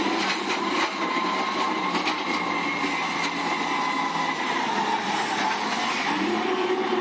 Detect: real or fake real